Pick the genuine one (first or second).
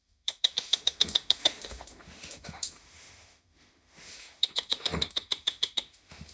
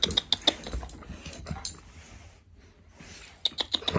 second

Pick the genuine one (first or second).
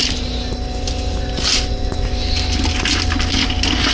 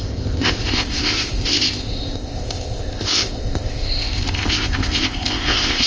first